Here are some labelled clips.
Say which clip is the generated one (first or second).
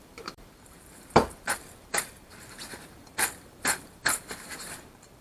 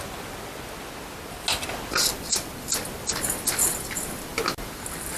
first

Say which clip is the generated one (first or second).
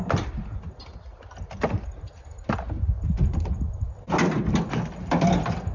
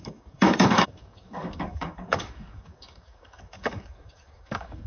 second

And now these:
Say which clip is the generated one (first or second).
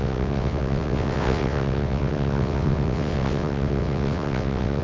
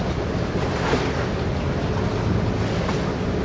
first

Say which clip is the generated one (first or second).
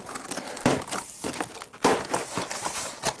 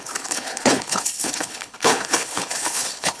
second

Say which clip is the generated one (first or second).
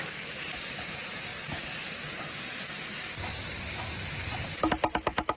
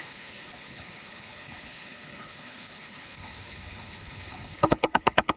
second